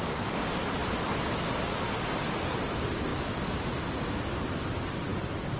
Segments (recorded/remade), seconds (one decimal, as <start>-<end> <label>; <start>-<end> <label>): 0.0-5.6 recorded